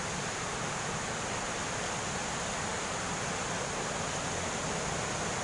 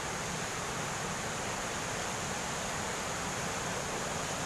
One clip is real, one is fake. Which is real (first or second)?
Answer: first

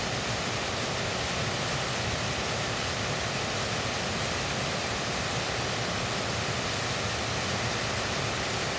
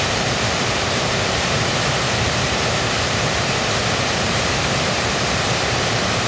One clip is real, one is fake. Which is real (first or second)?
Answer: first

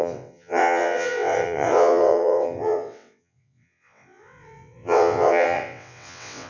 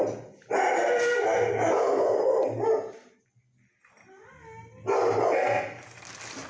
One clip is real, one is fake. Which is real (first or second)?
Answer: second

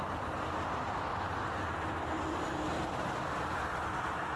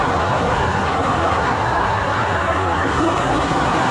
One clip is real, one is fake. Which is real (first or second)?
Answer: first